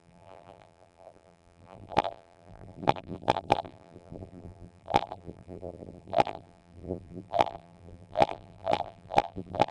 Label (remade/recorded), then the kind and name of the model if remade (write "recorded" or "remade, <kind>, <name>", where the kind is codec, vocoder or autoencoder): remade, vocoder, BigVGAN v2